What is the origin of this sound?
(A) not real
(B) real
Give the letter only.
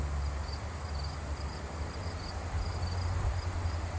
B